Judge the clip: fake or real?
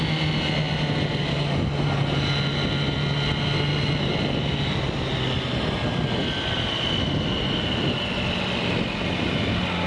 real